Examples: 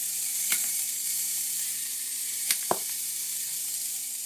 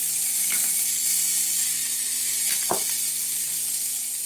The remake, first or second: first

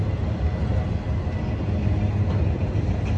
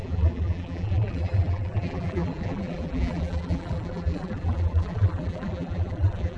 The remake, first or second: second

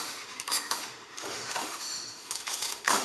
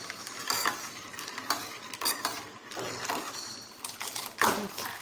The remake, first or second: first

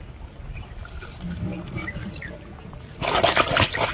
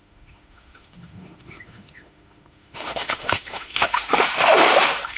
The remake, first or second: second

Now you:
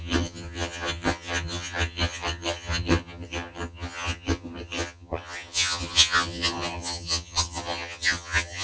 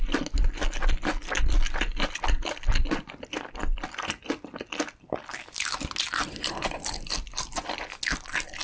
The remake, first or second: first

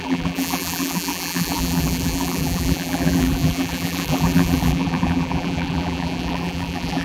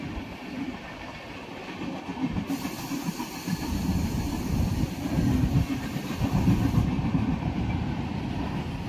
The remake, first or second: first